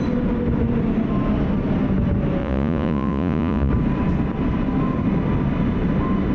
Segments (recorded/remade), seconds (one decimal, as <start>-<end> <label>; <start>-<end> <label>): 0.0-2.4 recorded; 2.4-3.7 remade; 3.7-6.3 recorded